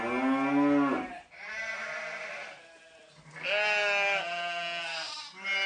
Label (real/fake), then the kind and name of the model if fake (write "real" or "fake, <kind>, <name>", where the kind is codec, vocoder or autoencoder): real